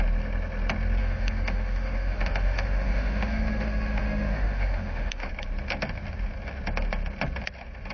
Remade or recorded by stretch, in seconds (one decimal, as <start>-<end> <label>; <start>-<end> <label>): 0.0-1.0 recorded; 1.0-5.3 remade; 5.3-7.9 recorded